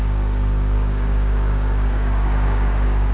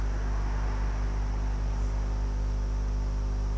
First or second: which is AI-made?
first